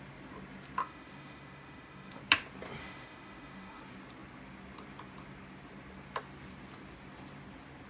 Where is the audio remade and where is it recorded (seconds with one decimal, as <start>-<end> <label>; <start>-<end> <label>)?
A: 0.0-0.8 recorded; 0.8-2.2 remade; 2.2-2.8 recorded; 2.8-3.8 remade; 3.8-7.9 recorded